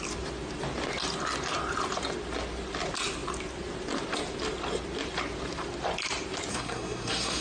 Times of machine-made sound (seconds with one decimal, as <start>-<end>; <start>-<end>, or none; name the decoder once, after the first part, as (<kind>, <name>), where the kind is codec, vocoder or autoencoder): 6.5-7.4 (codec, SNAC)